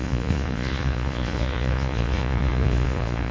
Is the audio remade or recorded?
remade